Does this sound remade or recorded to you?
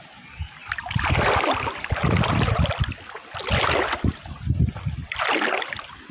recorded